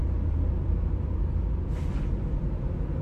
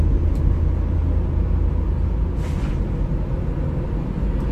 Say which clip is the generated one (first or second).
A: first